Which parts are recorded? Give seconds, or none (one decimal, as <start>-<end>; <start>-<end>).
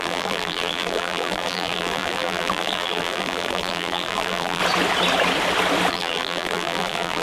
4.6-5.9